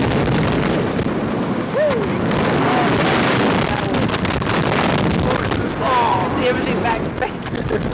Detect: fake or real real